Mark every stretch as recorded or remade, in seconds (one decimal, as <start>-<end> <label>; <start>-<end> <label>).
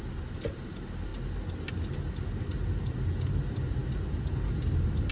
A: 0.0-5.1 recorded